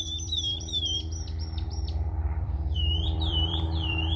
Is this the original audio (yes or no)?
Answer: no